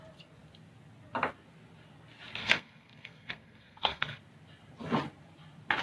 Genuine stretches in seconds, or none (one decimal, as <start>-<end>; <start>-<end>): 0.0-2.4; 4.2-5.8